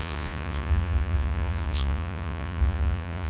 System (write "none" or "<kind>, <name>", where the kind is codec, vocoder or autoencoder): vocoder, Vocos